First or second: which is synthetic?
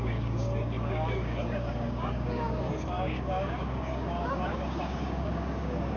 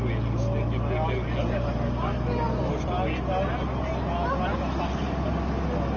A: first